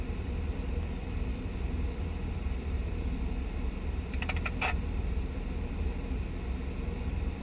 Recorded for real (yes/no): no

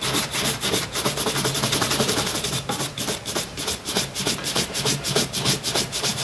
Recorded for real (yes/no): no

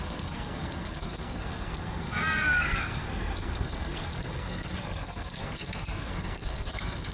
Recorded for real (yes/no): no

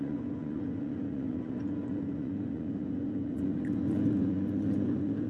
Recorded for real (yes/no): no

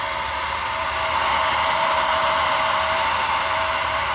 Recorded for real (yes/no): yes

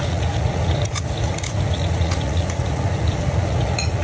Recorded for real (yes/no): no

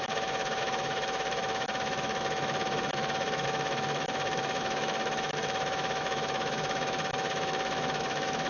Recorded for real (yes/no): no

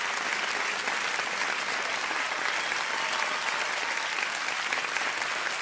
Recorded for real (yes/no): yes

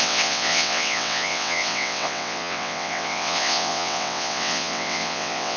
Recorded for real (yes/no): no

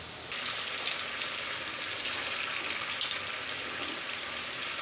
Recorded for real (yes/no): yes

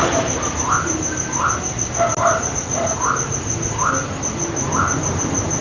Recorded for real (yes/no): yes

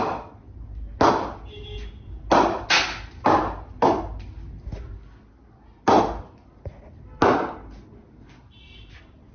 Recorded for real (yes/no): yes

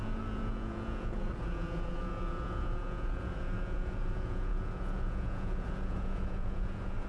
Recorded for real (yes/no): no